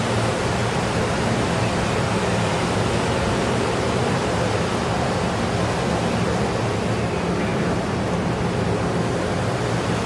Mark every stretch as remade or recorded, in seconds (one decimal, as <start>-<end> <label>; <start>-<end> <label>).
0.0-0.6 recorded; 0.6-5.2 remade; 5.2-7.5 recorded; 7.5-8.4 remade; 8.4-10.1 recorded